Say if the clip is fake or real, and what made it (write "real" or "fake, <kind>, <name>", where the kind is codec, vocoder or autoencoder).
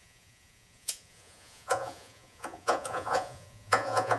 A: fake, vocoder, Vocos